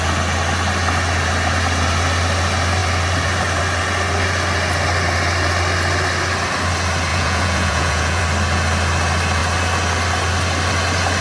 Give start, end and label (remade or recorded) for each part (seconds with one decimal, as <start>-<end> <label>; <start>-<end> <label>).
0.0-7.1 recorded; 7.1-8.2 remade; 8.2-11.2 recorded